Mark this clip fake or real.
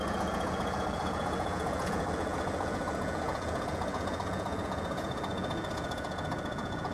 fake